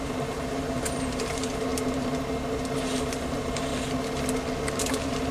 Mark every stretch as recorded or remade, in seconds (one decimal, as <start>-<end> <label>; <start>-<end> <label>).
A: 0.0-1.7 remade; 1.7-3.3 recorded; 3.3-3.7 remade; 3.7-4.8 recorded; 4.8-5.3 remade